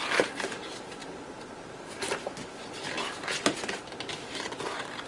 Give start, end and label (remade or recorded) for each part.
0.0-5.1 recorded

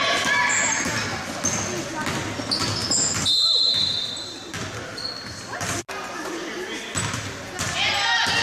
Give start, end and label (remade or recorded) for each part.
0.0-8.4 recorded

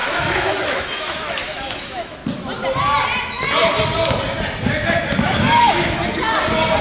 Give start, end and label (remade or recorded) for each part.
0.0-2.2 remade; 2.2-5.2 recorded; 5.2-6.0 remade; 6.0-6.8 recorded

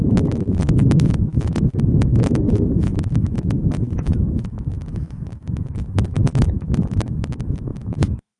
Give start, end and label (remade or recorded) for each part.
0.0-8.4 remade

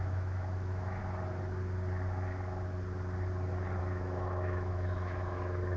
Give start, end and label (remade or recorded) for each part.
0.0-1.0 remade; 1.0-3.8 recorded; 3.8-5.8 remade

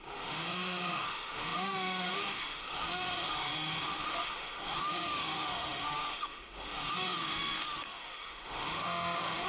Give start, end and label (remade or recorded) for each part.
0.0-9.5 remade

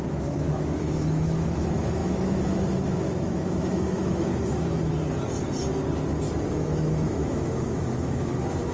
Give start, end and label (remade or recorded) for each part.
0.0-4.3 remade; 4.3-6.5 recorded; 6.5-8.7 remade

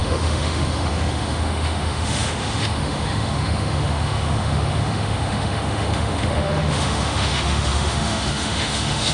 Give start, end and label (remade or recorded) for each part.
0.0-9.1 remade